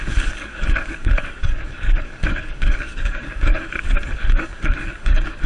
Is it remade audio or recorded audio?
remade